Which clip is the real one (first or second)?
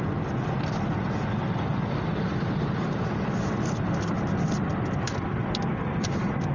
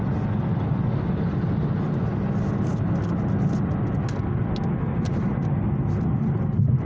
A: second